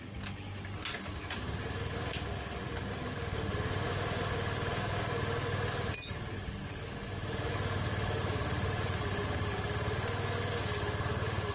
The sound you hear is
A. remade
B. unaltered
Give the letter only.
B